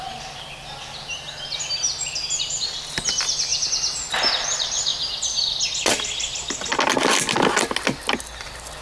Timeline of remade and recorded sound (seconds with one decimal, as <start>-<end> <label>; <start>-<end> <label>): 0.0-8.8 recorded